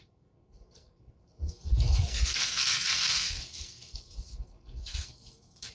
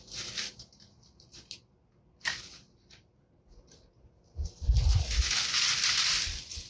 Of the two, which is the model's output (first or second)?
first